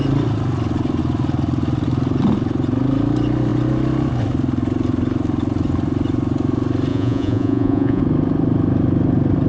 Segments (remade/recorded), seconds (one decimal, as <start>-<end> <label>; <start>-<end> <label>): 0.0-6.9 recorded; 6.9-8.0 remade; 8.0-9.5 recorded